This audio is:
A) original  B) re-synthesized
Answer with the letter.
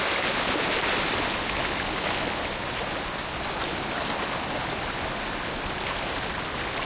A